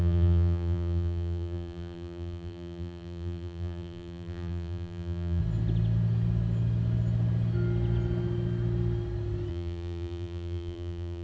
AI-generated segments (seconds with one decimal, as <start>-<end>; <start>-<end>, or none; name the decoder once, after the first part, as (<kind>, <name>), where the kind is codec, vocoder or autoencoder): 0.0-5.4 (vocoder, BigVGAN v2); 9.5-11.2